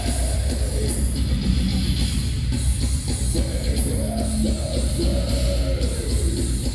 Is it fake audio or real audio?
real